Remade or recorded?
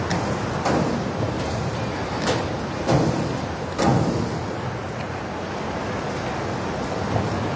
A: recorded